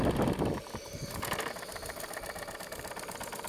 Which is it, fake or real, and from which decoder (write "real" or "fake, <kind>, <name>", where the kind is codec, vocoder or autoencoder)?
real